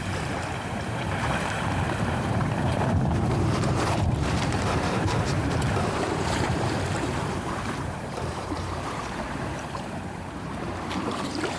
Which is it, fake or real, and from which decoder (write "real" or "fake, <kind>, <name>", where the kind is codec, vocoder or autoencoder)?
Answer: fake, vocoder, BigVGAN v2